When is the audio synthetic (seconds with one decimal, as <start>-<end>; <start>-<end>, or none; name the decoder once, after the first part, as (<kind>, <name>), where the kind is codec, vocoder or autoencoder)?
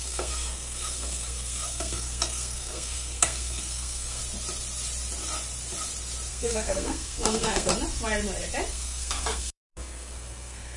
0.0-4.2 (codec, SNAC); 6.3-7.7; 8.7-10.8